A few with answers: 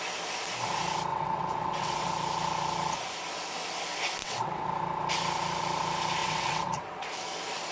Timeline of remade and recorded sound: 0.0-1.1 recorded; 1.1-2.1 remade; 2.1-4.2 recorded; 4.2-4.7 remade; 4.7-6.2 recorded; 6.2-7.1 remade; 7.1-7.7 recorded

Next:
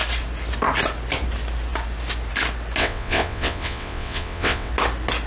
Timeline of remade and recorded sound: 0.0-2.8 recorded; 2.8-4.7 remade; 4.7-5.3 recorded